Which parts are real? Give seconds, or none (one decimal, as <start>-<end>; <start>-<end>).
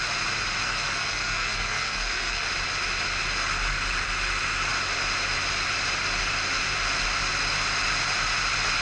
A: 0.0-0.6; 2.5-8.8